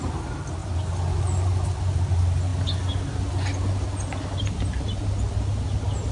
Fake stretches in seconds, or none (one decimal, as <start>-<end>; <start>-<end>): none